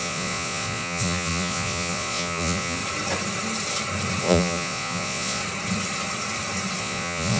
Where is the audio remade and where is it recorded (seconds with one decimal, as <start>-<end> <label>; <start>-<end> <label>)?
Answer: 0.0-2.8 remade; 2.8-4.2 recorded; 4.2-5.4 remade; 5.4-6.8 recorded; 6.8-7.4 remade